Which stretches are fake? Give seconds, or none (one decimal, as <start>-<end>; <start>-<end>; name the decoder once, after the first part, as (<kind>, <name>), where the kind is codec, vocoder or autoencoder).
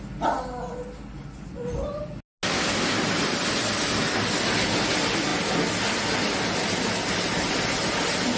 none